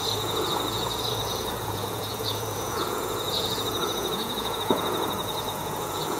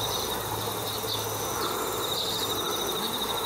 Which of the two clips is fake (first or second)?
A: first